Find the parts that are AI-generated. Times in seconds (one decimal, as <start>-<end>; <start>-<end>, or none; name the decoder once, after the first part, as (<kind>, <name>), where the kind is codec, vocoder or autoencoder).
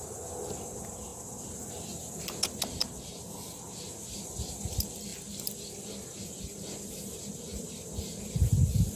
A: none